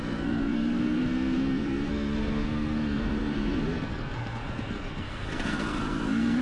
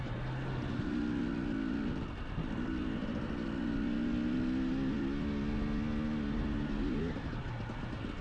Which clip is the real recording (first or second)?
second